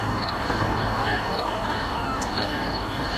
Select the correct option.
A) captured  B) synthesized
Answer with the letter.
B